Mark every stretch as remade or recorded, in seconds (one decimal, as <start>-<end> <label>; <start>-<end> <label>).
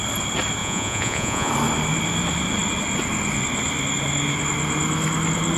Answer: 0.0-0.6 recorded; 0.6-1.5 remade; 1.5-5.6 recorded